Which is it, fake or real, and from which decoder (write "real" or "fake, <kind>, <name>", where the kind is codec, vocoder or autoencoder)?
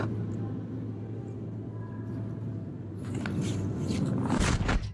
real